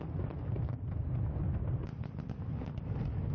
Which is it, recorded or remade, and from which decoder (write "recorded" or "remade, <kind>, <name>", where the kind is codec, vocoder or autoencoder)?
recorded